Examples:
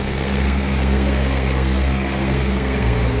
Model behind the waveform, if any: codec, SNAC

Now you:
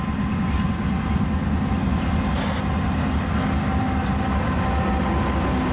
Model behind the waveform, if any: none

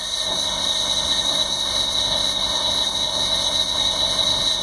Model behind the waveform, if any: codec, SNAC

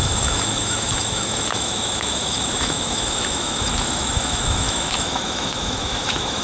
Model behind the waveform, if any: autoencoder, DAC-VAE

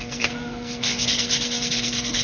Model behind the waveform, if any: codec, SNAC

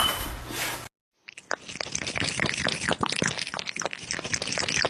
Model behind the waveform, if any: none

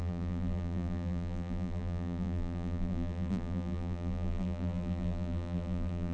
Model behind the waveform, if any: vocoder, BigVGAN v2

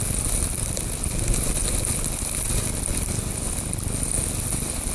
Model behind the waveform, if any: none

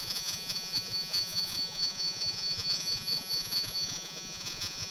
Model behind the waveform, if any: vocoder, Vocos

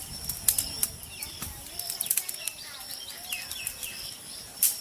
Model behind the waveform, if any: vocoder, BigVGAN v2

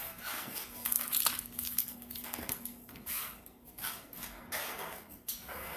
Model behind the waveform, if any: codec, SNAC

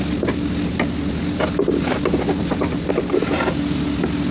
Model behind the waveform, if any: none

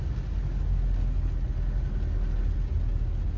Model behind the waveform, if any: none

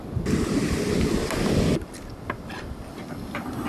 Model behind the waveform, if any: none